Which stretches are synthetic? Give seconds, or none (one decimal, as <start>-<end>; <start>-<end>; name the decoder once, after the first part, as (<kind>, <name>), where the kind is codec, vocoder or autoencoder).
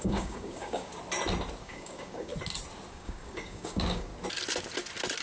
0.0-0.9 (codec, DAC); 1.6-2.3; 2.9-4.1